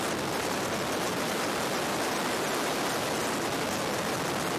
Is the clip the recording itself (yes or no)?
yes